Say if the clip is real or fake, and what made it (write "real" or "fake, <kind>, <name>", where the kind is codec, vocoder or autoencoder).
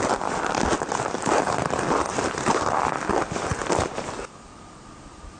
fake, vocoder, BigVGAN v2